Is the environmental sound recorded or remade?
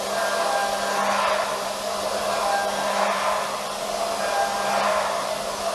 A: recorded